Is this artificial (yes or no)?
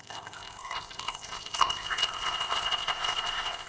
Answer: yes